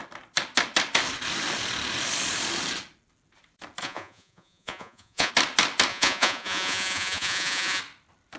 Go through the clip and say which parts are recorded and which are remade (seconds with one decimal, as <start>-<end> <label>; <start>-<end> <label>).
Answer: 0.0-3.8 recorded; 3.8-5.3 remade; 5.3-5.9 recorded; 5.9-7.8 remade; 7.8-8.4 recorded